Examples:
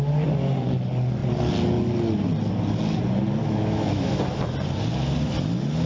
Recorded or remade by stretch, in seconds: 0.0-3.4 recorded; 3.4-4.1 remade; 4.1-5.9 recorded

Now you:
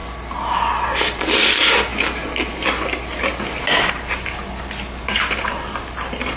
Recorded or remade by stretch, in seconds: 0.0-6.4 recorded